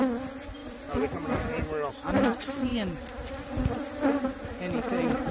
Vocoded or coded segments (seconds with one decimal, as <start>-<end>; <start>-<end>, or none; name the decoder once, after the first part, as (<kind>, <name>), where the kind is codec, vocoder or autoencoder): 0.6-1.9 (vocoder, BigVGAN v2)